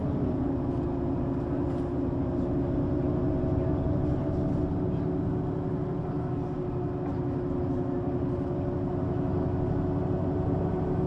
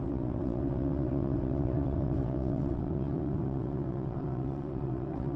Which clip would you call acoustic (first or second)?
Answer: first